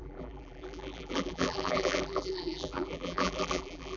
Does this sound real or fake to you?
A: fake